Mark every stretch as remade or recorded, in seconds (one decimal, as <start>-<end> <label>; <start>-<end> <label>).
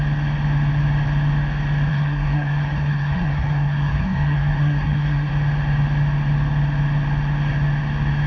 0.0-1.9 recorded; 1.9-5.3 remade; 5.3-8.3 recorded